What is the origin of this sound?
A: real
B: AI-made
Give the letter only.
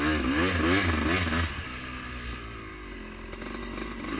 A